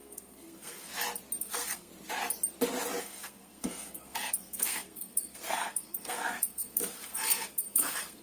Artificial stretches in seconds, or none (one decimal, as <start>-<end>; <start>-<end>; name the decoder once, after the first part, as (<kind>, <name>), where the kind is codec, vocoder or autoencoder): 0.0-0.9 (codec, SNAC); 1.4-1.9; 3.0-8.2